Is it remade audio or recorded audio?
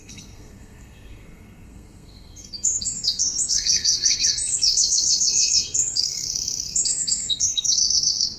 remade